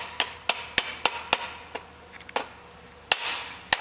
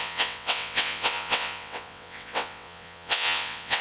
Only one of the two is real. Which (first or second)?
first